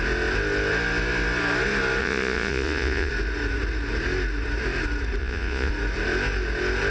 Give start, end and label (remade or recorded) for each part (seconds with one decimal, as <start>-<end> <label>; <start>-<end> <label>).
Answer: 0.0-2.0 recorded; 2.0-3.1 remade; 3.1-5.2 recorded; 5.2-5.7 remade; 5.7-6.9 recorded